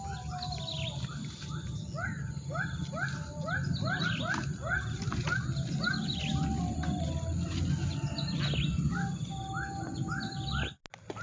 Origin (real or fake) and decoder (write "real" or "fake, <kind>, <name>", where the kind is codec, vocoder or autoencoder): real